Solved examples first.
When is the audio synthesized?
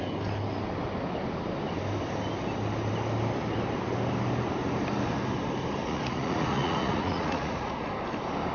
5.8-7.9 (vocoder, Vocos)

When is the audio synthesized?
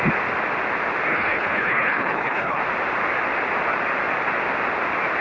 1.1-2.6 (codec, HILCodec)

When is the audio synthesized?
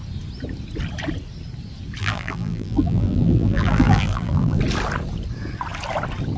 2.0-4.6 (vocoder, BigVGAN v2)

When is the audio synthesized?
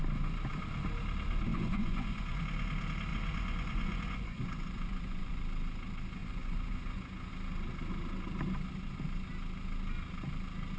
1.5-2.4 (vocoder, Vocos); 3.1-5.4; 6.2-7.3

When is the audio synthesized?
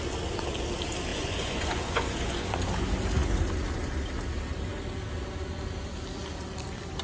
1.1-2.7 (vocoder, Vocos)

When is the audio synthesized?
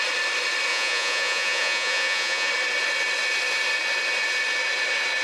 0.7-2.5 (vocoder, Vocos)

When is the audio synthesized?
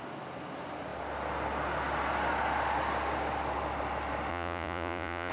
4.3-5.3 (vocoder, Vocos)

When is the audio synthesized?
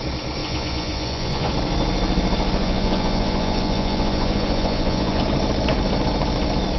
0.4-1.5 (vocoder, Vocos); 2.6-5.2